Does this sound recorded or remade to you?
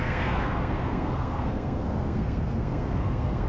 remade